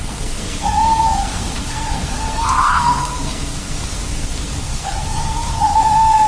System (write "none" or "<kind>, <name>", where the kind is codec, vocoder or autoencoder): codec, SNAC